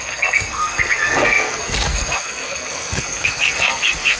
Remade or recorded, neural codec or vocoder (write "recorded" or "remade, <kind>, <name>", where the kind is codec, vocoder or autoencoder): remade, codec, SNAC